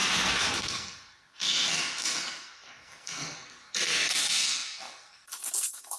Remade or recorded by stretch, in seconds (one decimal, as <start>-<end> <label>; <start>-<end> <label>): 0.0-6.0 remade